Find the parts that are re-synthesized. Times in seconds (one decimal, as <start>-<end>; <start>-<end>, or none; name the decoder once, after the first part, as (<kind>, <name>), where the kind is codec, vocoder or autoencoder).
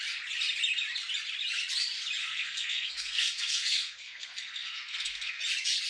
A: 2.2-5.4 (codec, SNAC)